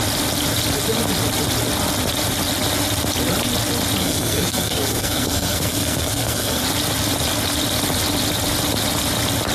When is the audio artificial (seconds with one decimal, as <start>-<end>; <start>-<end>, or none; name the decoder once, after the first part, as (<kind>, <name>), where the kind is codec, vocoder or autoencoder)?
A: 4.0-6.6 (codec, SNAC)